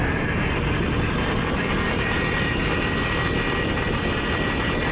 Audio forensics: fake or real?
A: real